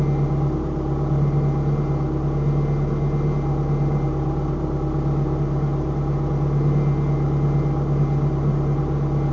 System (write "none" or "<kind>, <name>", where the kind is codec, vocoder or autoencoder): none